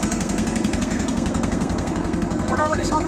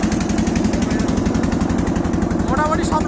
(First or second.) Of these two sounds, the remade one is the first